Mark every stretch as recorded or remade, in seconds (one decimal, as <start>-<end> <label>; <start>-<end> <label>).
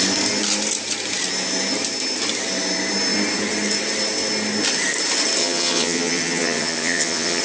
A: 0.0-5.4 recorded; 5.4-7.4 remade